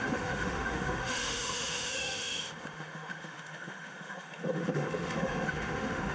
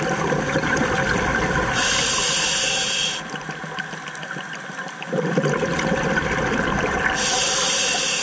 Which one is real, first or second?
second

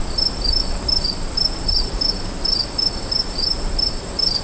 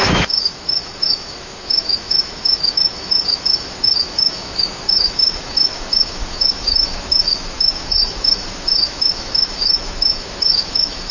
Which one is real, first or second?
first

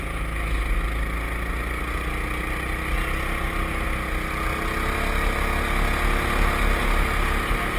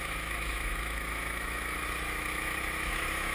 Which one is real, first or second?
first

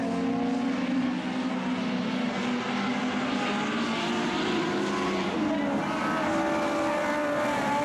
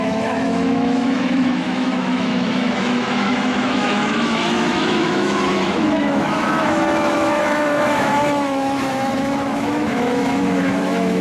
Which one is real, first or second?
first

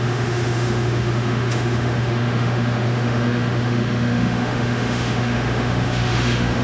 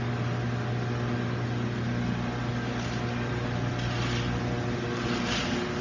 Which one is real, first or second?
second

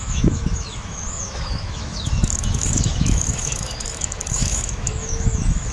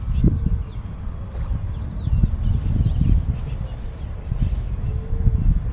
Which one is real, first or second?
second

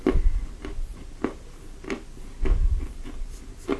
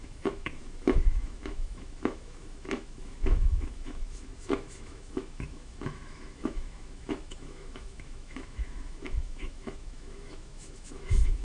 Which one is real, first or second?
first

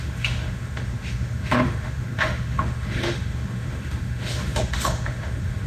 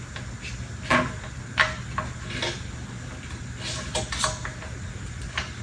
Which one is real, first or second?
second